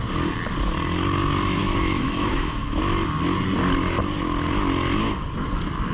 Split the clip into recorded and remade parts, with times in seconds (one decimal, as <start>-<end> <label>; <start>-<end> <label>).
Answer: 0.0-1.6 recorded; 1.6-2.8 remade; 2.8-5.9 recorded

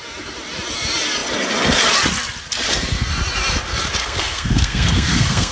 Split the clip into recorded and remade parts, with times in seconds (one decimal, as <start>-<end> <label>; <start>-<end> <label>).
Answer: 0.0-4.0 recorded; 4.0-5.5 remade

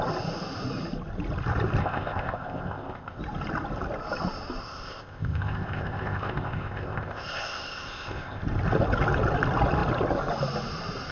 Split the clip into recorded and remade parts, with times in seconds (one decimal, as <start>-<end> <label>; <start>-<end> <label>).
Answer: 0.0-1.8 recorded; 1.8-3.2 remade; 3.2-4.6 recorded; 4.6-8.4 remade; 8.4-11.1 recorded

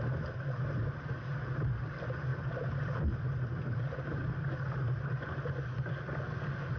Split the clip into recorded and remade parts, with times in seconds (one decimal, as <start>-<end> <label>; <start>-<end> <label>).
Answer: 0.0-2.3 recorded; 2.3-3.5 remade; 3.5-6.8 recorded

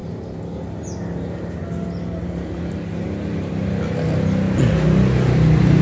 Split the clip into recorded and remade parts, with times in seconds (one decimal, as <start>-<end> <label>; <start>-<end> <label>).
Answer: 0.0-5.8 recorded

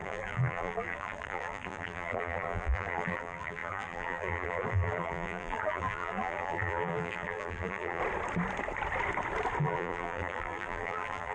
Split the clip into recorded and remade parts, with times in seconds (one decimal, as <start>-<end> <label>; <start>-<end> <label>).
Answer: 0.0-8.0 remade; 8.0-9.6 recorded; 9.6-11.3 remade

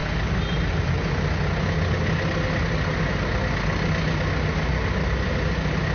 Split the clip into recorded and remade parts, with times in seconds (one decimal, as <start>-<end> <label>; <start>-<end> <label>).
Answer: 0.0-5.9 recorded

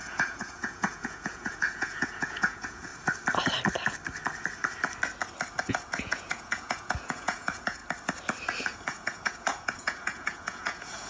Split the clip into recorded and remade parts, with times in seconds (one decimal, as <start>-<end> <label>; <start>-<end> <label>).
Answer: 0.0-2.9 remade; 2.9-5.7 recorded; 5.7-7.8 remade; 7.8-8.6 recorded; 8.6-11.1 remade